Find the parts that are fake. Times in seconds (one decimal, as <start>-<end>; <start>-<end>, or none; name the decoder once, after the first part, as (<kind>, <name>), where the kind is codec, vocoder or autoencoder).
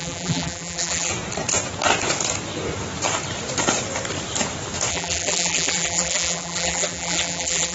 0.0-1.1 (vocoder, BigVGAN v2); 4.9-7.7